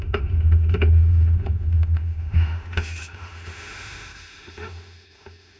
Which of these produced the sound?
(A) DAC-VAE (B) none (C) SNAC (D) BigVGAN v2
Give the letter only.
A